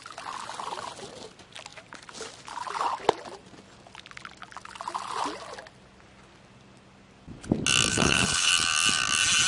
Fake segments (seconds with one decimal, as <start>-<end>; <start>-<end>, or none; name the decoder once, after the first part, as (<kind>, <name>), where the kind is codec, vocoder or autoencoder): 7.9-8.5 (codec, HILCodec)